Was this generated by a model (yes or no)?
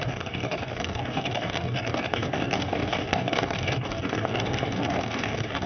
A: yes